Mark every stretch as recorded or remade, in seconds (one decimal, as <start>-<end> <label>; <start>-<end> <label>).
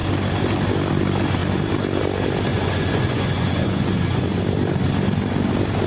0.0-2.5 recorded; 2.5-4.4 remade; 4.4-5.9 recorded